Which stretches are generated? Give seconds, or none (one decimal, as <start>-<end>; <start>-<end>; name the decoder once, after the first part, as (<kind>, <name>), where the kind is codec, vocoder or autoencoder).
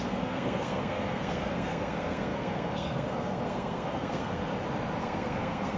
0.0-4.4 (codec, SNAC); 5.0-5.8